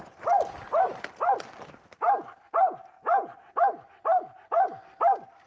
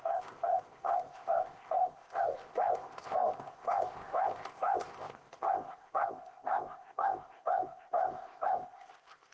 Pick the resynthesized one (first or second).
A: second